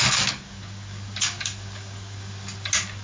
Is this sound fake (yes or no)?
yes